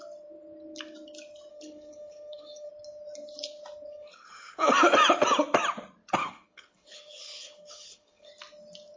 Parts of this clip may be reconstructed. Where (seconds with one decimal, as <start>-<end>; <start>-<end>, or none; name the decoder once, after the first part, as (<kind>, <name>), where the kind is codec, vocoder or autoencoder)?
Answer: 1.5-2.7 (codec, HILCodec); 3.9-4.7; 6.2-8.3